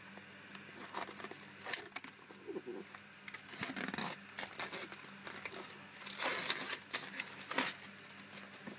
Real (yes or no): yes